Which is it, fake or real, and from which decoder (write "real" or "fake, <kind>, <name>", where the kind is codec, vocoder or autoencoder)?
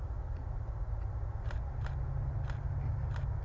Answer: real